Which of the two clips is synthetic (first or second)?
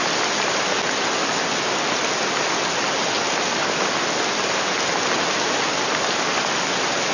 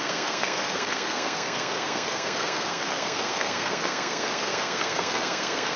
second